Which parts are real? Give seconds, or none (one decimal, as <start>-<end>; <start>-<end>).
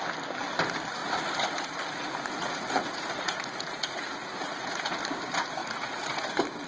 0.0-1.0; 5.0-5.6; 6.3-6.7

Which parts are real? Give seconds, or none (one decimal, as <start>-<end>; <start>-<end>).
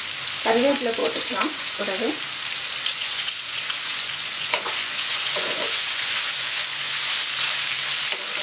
0.0-1.0; 1.8-2.9; 7.1-8.4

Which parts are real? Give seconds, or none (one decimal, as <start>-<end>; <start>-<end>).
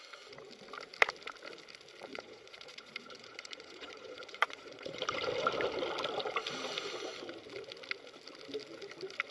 0.0-2.1; 5.0-9.3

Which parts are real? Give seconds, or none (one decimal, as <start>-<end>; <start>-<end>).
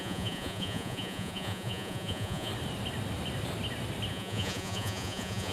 2.5-4.1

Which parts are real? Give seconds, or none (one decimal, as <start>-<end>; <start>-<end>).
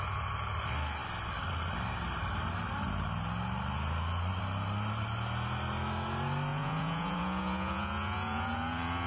0.0-6.5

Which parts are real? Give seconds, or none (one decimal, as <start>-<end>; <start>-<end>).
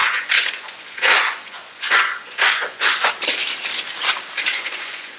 3.1-4.5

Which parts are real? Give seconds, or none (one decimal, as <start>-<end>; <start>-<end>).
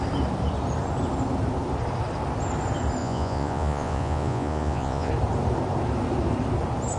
0.0-3.0; 5.1-7.0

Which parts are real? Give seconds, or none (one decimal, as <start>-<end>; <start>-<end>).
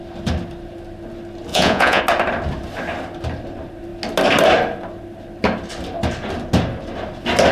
0.0-1.5; 2.0-7.5